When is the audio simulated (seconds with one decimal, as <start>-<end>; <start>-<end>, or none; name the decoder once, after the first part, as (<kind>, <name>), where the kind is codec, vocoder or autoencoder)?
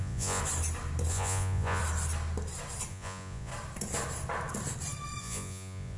0.0-0.4 (vocoder, Vocos); 1.1-1.8; 2.9-3.5; 5.2-6.0